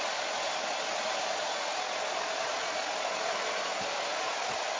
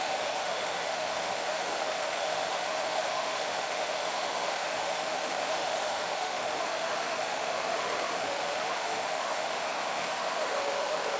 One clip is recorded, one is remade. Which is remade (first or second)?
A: second